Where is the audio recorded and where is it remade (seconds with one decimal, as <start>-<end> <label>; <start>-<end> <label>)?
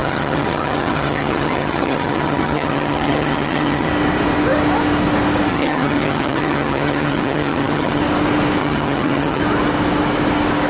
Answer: 0.0-3.9 remade; 3.9-5.5 recorded; 5.5-8.0 remade; 8.0-8.6 recorded; 8.6-9.4 remade; 9.4-10.7 recorded